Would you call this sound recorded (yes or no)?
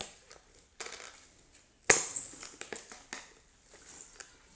yes